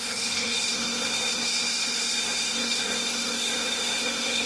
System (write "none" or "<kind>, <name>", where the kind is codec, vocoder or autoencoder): codec, SNAC